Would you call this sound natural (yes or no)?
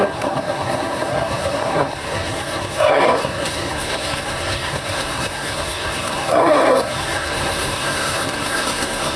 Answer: no